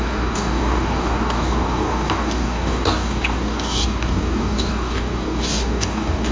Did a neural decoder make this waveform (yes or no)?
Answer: yes